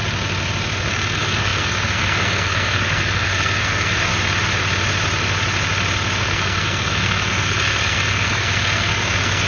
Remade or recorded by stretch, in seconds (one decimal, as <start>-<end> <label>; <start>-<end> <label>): 0.0-0.9 recorded; 0.9-4.1 remade; 4.1-6.2 recorded; 6.2-9.5 remade